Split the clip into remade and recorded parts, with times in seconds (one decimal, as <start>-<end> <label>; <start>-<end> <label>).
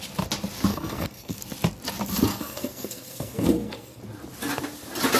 0.0-0.7 recorded; 0.7-1.4 remade; 1.4-2.3 recorded; 2.3-4.0 remade; 4.0-5.2 recorded